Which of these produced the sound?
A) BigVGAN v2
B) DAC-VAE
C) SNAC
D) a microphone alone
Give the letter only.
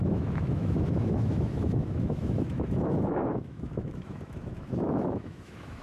B